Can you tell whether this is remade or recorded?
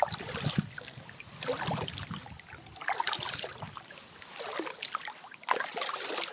remade